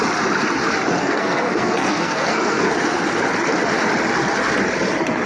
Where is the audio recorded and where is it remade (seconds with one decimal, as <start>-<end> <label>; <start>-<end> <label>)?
0.0-1.0 recorded; 1.0-2.7 remade; 2.7-5.3 recorded

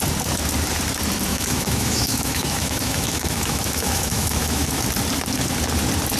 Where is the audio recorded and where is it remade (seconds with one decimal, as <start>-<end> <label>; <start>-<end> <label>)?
0.0-1.3 recorded; 1.3-4.8 remade; 4.8-6.2 recorded

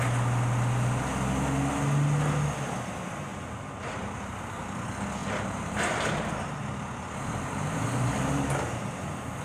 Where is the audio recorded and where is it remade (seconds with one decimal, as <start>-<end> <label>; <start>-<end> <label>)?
0.0-3.3 recorded; 3.3-4.4 remade; 4.4-5.2 recorded; 5.2-9.4 remade

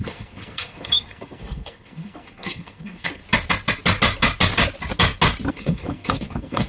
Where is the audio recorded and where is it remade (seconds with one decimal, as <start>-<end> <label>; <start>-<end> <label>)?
0.0-3.2 remade; 3.2-5.5 recorded; 5.5-6.7 remade

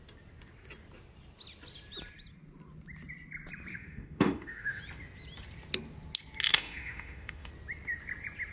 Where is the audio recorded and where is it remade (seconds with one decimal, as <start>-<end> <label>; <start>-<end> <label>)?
0.0-3.7 recorded; 3.7-4.8 remade; 4.8-6.5 recorded; 6.5-7.5 remade; 7.5-8.5 recorded

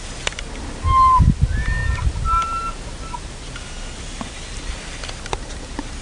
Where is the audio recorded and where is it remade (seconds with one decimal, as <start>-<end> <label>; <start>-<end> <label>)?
0.0-6.0 recorded

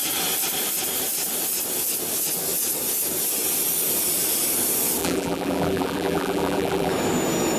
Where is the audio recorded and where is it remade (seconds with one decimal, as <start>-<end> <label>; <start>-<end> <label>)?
0.0-5.0 recorded; 5.0-6.9 remade; 6.9-7.6 recorded